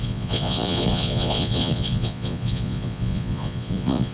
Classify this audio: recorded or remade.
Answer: remade